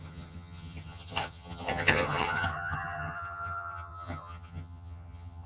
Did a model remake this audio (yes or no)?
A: yes